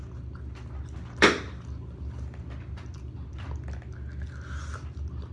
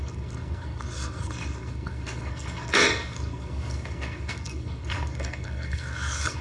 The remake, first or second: second